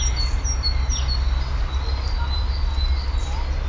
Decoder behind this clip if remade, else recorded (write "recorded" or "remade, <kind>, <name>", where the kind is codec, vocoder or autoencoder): recorded